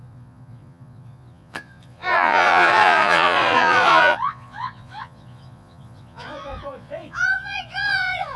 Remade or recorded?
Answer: remade